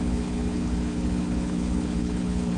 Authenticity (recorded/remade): remade